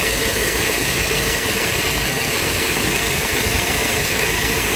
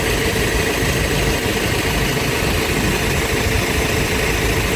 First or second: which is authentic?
second